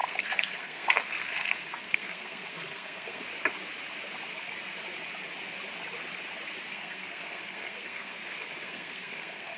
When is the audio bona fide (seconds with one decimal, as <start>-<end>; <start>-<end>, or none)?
3.2-6.7